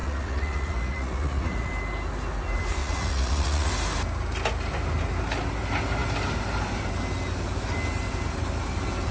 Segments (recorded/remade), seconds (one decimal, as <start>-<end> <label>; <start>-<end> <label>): 0.0-1.7 remade; 1.7-2.8 recorded; 2.8-3.7 remade; 3.7-9.1 recorded

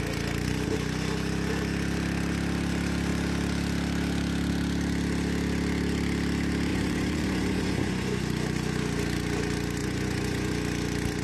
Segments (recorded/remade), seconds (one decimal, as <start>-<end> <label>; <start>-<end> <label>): 0.0-6.7 recorded; 6.7-8.2 remade; 8.2-9.8 recorded; 9.8-10.5 remade; 10.5-11.2 recorded

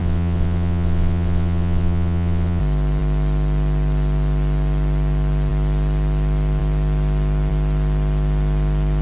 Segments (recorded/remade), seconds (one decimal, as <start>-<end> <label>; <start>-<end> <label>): 0.0-2.6 remade; 2.6-9.0 recorded

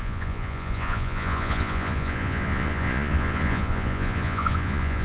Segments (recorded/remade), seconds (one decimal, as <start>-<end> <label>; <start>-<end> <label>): 0.0-5.0 remade

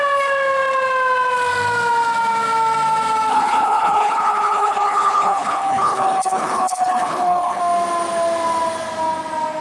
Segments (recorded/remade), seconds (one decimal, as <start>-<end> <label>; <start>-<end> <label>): 0.0-3.3 recorded; 3.3-7.6 remade; 7.6-9.6 recorded

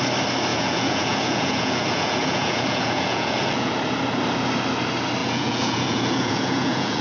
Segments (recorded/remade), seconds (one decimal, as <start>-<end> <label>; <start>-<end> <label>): 0.0-0.5 recorded; 0.5-3.7 remade; 3.7-5.2 recorded; 5.2-7.0 remade